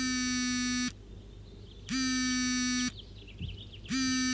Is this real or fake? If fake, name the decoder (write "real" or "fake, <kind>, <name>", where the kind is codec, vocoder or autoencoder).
real